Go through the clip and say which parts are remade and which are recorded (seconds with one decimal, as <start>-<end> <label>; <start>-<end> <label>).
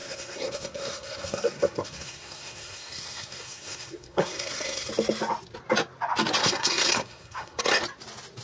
0.0-4.9 remade; 4.9-6.4 recorded; 6.4-7.6 remade; 7.6-8.4 recorded